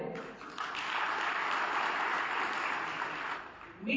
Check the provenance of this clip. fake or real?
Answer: real